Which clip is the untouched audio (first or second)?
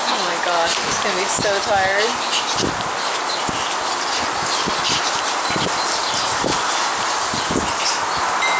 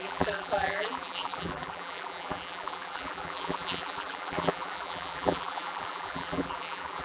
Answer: first